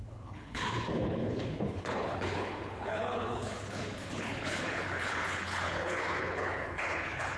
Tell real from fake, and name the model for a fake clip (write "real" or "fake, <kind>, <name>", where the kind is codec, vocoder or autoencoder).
fake, codec, HILCodec